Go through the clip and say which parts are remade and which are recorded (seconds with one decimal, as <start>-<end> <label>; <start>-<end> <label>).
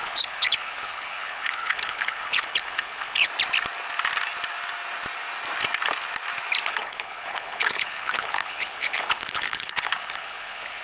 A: 0.0-3.3 remade; 3.3-6.7 recorded; 6.7-10.8 remade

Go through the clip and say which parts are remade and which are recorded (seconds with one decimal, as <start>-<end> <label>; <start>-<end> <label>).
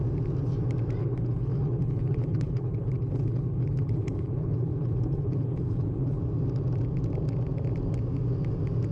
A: 0.0-1.0 recorded; 1.0-6.2 remade; 6.2-8.9 recorded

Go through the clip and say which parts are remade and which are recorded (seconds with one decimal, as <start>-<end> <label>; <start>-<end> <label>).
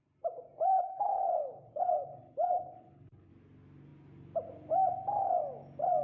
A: 0.0-0.7 recorded; 0.7-3.3 remade; 3.3-6.0 recorded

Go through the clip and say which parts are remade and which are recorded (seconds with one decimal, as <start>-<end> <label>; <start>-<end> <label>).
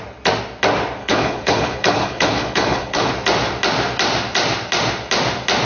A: 0.0-1.0 recorded; 1.0-3.1 remade; 3.1-5.7 recorded